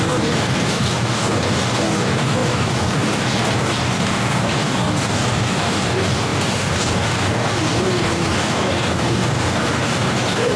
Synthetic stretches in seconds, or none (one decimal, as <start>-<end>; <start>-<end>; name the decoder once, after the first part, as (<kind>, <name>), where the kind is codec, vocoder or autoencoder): 0.0-10.6 (codec, DAC)